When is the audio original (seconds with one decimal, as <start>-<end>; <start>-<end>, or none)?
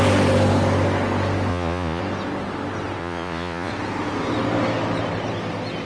0.0-1.5; 2.0-3.0; 3.7-5.8